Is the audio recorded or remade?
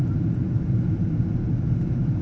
recorded